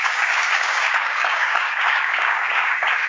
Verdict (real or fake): fake